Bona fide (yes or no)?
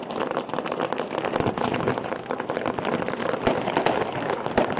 yes